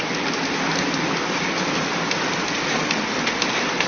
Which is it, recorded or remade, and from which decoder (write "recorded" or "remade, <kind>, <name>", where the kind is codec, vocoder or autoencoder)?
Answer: recorded